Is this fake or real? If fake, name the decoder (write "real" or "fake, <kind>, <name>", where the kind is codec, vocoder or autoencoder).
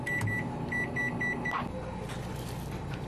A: real